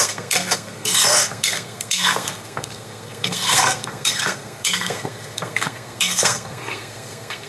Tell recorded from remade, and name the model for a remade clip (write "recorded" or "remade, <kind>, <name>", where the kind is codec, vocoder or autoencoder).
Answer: remade, codec, SNAC